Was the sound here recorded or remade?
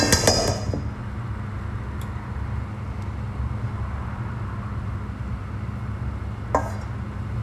recorded